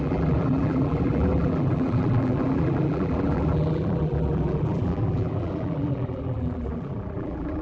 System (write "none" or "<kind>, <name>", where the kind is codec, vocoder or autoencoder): vocoder, BigVGAN v2